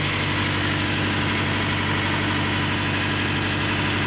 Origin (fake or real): real